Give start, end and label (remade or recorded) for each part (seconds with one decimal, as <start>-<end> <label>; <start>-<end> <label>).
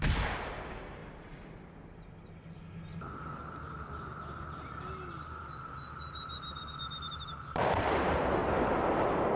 0.0-1.0 remade; 1.0-6.1 recorded; 6.1-8.4 remade; 8.4-9.4 recorded